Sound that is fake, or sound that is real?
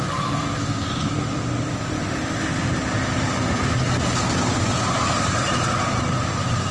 real